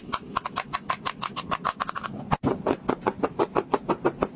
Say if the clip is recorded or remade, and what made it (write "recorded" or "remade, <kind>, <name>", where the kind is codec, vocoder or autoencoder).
recorded